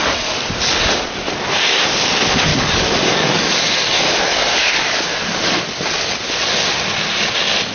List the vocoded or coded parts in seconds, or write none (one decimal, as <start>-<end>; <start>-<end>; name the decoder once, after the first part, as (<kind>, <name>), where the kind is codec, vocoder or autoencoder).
2.5-5.6 (codec, DAC)